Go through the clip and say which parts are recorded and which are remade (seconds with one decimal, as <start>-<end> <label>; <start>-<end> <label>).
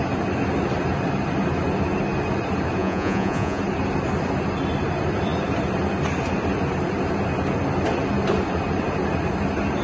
0.0-2.8 recorded; 2.8-3.6 remade; 3.6-9.8 recorded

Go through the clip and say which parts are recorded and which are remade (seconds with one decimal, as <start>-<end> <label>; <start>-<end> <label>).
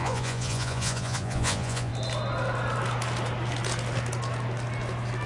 0.0-1.9 remade; 1.9-5.3 recorded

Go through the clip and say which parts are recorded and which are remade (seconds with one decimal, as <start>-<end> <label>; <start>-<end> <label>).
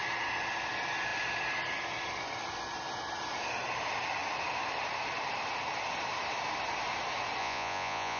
0.0-7.4 recorded; 7.4-8.2 remade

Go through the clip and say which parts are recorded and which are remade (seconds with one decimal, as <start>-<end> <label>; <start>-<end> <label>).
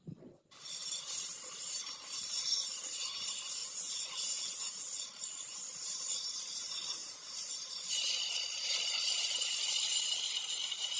0.0-3.6 recorded; 3.6-4.8 remade; 4.8-7.0 recorded; 7.0-7.5 remade; 7.5-11.0 recorded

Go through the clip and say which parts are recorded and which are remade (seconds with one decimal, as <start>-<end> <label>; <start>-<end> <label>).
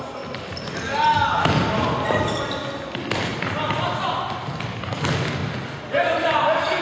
0.0-6.8 recorded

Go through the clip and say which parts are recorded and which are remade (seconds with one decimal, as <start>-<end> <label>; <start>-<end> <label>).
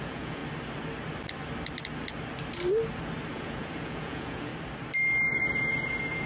0.0-0.4 remade; 0.4-3.3 recorded; 3.3-4.5 remade; 4.5-5.3 recorded; 5.3-6.3 remade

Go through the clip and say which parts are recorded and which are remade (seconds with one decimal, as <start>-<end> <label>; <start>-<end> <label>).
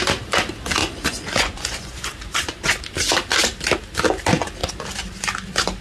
0.0-0.8 recorded; 0.8-2.8 remade; 2.8-5.8 recorded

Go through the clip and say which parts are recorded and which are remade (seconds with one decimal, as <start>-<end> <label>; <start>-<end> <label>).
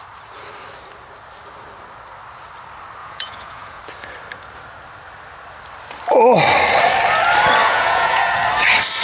0.0-3.0 recorded; 3.0-3.8 remade; 3.8-7.6 recorded; 7.6-8.3 remade; 8.3-9.0 recorded